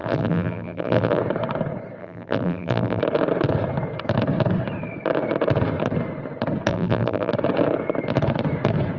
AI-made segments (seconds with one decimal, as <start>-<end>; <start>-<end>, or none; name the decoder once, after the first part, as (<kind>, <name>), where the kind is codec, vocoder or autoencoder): 0.0-1.2 (vocoder, BigVGAN v2); 2.0-3.0; 6.7-7.3